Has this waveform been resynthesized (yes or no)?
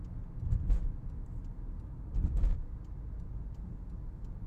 no